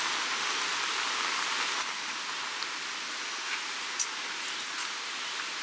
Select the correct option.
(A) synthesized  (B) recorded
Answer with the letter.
B